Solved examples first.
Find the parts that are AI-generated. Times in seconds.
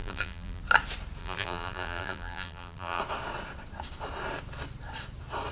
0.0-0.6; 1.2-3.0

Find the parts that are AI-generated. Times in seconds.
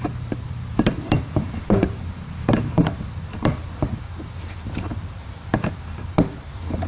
0.0-6.9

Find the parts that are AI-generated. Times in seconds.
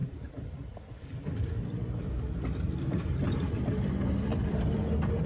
0.0-3.2; 4.3-5.3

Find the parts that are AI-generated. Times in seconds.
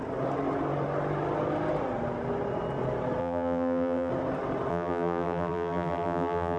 3.2-4.1; 4.7-6.6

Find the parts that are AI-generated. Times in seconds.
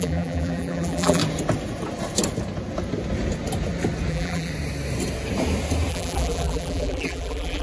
0.0-1.2; 4.1-4.5; 5.9-7.6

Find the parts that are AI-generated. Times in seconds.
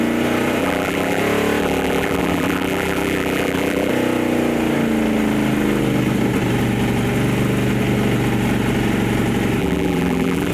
0.6-1.2; 1.6-3.9; 9.6-10.5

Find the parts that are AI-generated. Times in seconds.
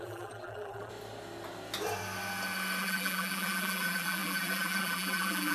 0.0-0.9; 2.8-5.5